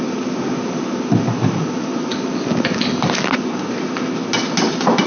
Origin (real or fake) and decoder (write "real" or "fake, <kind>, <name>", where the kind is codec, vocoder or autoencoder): real